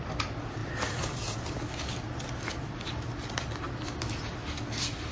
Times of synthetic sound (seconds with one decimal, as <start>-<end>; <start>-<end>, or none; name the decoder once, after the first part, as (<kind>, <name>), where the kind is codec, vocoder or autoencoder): none